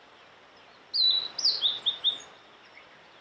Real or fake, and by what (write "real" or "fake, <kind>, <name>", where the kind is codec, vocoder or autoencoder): real